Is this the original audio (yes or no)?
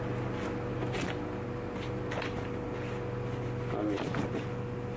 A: yes